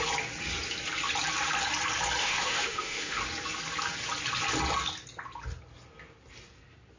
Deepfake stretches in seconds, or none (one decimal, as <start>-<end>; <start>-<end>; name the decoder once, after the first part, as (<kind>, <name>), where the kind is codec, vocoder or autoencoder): 2.2-3.2 (autoencoder, DAC-VAE)